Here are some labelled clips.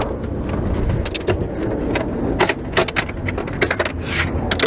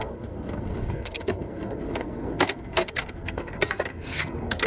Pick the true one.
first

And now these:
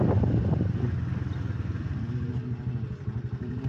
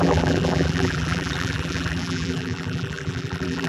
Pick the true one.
first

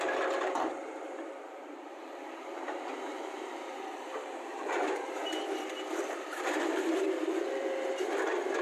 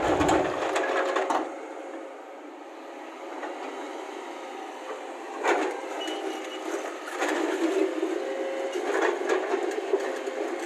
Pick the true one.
second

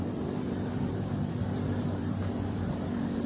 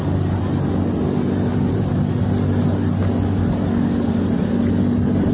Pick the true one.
second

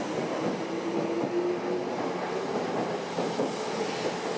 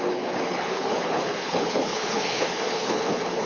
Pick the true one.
first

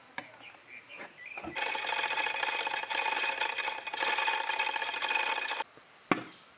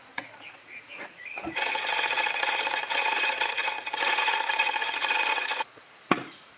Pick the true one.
first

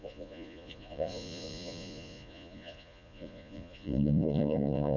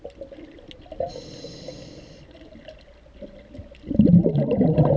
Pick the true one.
second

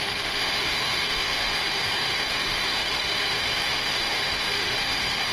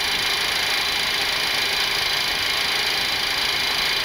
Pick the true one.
second